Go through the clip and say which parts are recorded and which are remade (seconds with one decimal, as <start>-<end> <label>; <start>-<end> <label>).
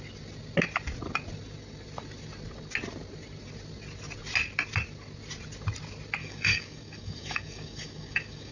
0.0-6.2 recorded; 6.2-8.5 remade